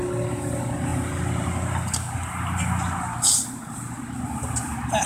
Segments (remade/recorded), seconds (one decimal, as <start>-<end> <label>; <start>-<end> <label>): 0.0-5.1 recorded